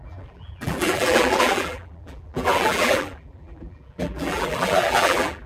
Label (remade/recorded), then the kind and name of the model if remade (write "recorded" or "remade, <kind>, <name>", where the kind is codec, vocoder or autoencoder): remade, vocoder, BigVGAN v2